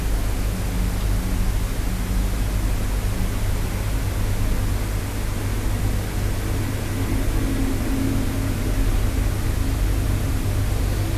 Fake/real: real